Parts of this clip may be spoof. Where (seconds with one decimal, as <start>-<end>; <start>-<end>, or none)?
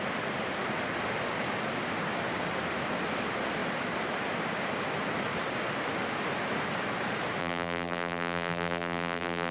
7.4-9.5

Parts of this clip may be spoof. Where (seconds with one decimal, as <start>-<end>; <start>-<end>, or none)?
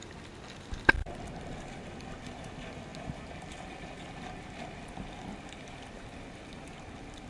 2.9-4.9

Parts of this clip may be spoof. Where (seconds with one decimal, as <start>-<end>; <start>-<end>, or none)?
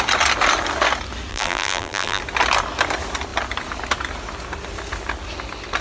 1.3-2.2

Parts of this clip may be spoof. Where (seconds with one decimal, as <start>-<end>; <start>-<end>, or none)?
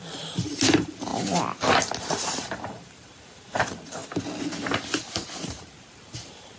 0.0-1.1; 2.0-4.0; 5.4-6.6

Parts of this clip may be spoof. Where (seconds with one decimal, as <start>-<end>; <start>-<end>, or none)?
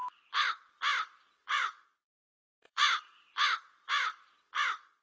0.0-0.7; 1.4-4.4